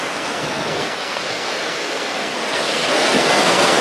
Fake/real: fake